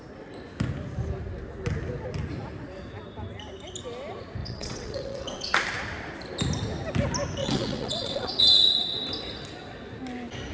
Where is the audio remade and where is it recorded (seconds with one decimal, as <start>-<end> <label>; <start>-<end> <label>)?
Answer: 0.0-4.4 recorded; 4.4-5.4 remade; 5.4-7.4 recorded; 7.4-8.4 remade; 8.4-10.5 recorded